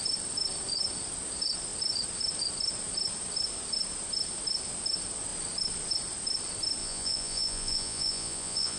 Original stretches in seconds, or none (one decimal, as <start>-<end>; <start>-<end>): 0.0-6.8